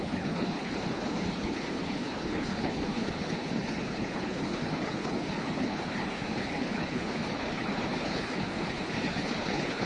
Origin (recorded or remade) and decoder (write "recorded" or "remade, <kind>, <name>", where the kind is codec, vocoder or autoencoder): remade, codec, HILCodec